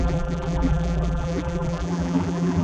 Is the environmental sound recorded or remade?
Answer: remade